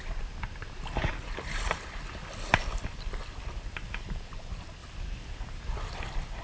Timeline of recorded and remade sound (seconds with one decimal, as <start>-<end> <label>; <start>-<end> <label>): 0.0-4.8 recorded; 4.8-5.4 remade; 5.4-6.4 recorded